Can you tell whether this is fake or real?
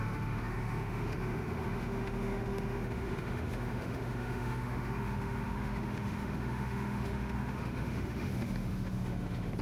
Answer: fake